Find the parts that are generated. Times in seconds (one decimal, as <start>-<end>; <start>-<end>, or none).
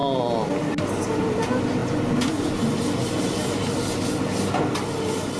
none